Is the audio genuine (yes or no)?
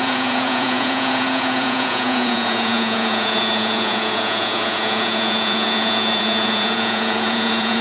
no